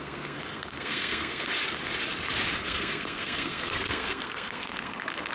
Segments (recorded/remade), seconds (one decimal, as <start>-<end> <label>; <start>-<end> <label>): 0.0-1.5 remade; 1.5-2.6 recorded; 2.6-5.3 remade